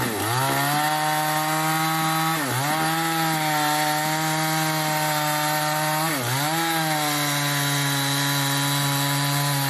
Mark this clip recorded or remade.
recorded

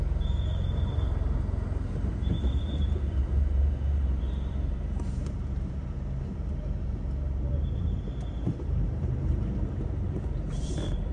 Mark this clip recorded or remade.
remade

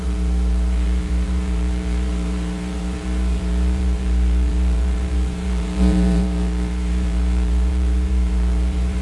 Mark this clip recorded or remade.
remade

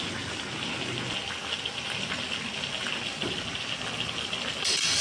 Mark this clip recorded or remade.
recorded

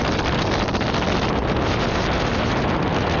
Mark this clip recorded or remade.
recorded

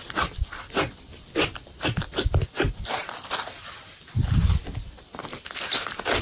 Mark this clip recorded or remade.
remade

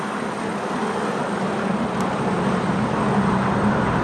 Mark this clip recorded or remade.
recorded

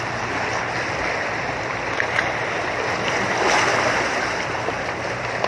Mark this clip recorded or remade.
recorded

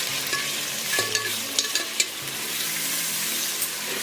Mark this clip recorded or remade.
remade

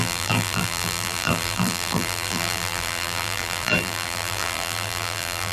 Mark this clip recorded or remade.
remade